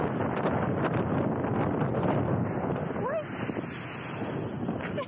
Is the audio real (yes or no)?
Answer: yes